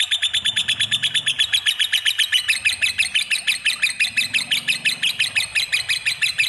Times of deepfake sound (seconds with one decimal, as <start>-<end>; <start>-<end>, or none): 0.6-3.0; 5.5-6.1